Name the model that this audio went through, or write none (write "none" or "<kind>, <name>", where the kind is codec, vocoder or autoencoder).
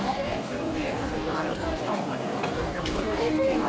codec, DAC